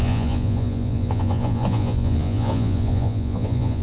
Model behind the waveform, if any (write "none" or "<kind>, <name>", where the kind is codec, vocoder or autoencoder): vocoder, Vocos